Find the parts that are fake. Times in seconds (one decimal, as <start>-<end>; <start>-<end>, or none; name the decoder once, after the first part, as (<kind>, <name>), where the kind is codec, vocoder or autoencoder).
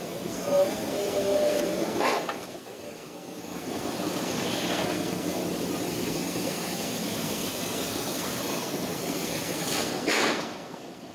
0.0-5.4 (codec, SNAC); 5.9-11.1